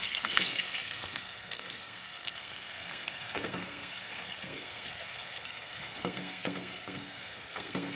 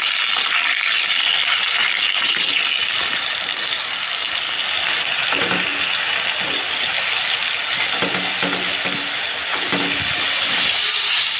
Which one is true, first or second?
second